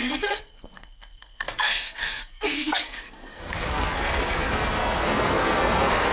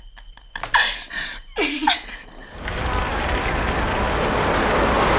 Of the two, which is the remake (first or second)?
first